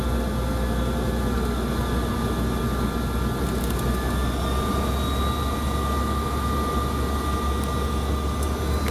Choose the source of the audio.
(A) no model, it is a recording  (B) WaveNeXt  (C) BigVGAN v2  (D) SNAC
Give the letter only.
A